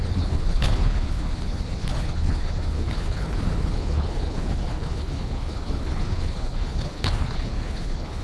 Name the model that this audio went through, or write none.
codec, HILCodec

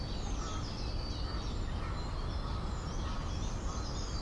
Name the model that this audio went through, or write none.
none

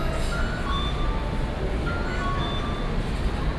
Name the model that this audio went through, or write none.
none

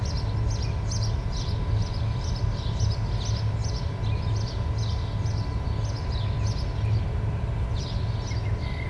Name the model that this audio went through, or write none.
none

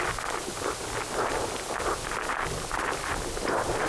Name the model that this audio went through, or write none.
none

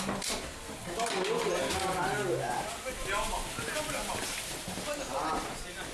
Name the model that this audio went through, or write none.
none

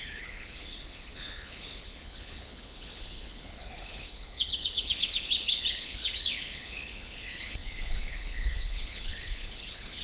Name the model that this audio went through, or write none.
codec, HILCodec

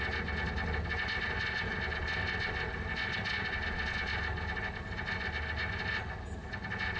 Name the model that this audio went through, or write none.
none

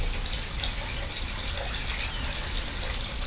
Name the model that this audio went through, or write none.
none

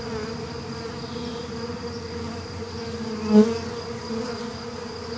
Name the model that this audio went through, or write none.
none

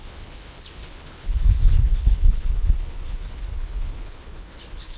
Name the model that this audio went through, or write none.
codec, HILCodec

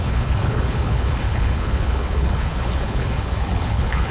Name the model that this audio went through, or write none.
codec, HILCodec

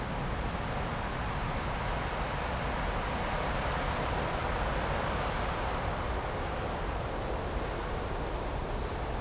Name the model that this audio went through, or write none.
none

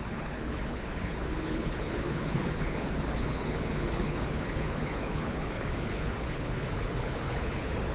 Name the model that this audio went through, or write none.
codec, HILCodec